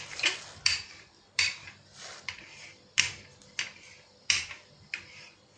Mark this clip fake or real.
fake